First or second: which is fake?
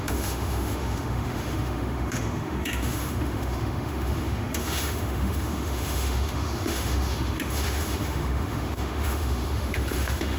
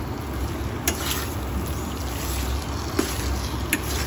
first